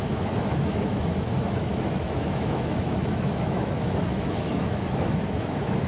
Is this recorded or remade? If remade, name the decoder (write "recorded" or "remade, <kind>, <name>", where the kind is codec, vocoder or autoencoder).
remade, autoencoder, DAC-VAE